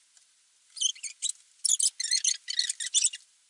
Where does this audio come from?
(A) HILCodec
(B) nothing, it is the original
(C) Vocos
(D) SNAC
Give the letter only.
B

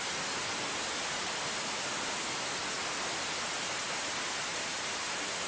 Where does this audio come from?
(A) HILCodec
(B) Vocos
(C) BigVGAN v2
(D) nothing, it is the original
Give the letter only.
D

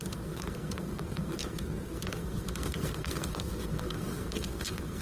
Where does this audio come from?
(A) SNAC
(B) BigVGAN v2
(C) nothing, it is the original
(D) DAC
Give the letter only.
A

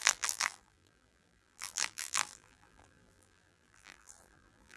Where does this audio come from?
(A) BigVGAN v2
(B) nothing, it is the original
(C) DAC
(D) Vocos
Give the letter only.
A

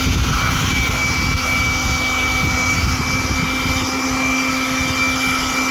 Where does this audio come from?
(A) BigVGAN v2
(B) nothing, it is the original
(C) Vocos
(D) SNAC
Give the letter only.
B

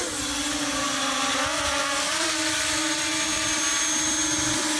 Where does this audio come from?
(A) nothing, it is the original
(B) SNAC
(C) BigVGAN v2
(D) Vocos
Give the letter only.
A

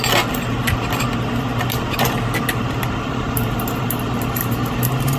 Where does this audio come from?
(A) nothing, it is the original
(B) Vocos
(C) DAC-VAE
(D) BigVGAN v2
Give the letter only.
A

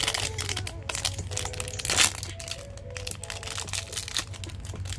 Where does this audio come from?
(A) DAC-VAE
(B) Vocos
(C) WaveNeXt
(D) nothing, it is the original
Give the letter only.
D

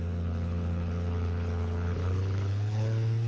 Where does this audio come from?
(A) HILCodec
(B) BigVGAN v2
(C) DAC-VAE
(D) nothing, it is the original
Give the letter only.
A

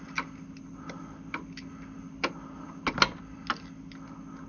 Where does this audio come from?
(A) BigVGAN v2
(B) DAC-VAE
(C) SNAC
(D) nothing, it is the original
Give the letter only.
D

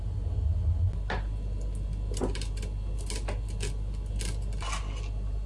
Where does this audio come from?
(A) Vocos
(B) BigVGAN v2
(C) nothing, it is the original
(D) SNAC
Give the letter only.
C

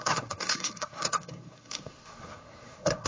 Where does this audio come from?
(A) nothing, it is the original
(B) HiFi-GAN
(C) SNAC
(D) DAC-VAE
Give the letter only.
C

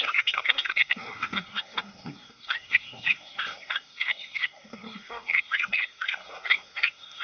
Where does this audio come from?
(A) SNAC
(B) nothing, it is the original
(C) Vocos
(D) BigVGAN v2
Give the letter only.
A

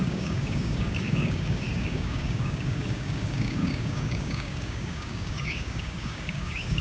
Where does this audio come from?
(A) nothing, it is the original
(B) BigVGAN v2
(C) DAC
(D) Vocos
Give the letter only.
C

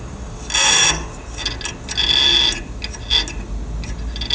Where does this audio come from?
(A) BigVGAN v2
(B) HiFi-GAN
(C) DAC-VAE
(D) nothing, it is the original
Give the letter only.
D